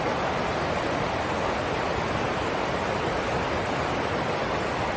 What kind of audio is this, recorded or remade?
recorded